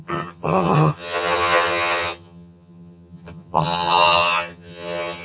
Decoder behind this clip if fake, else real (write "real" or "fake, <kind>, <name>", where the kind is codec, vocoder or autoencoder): fake, vocoder, HiFi-GAN